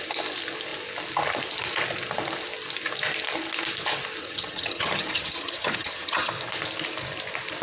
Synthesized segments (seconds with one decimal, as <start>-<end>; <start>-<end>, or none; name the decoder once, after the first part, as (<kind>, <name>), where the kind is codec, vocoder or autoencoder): 4.2-6.3 (vocoder, HiFi-GAN)